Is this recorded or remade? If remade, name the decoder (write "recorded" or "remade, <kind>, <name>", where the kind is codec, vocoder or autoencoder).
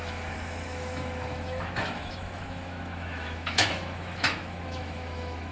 remade, autoencoder, DAC-VAE